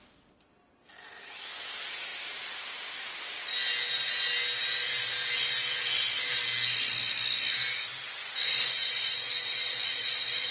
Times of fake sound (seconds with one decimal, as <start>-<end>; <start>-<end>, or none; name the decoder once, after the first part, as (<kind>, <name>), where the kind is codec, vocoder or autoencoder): 8.2-10.5 (vocoder, Vocos)